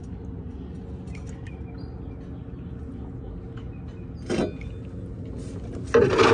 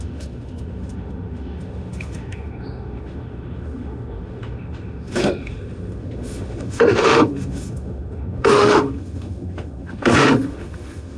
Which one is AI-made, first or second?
second